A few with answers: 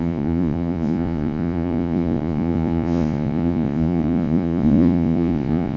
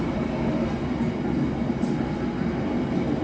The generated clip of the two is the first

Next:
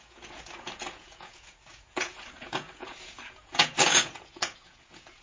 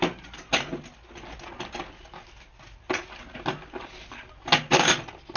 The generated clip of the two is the first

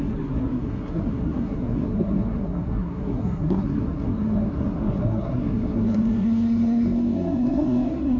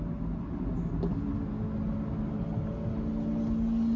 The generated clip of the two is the first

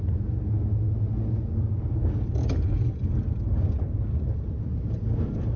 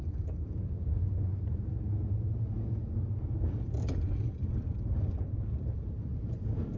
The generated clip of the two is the second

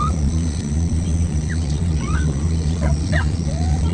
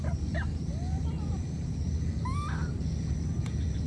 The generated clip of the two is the first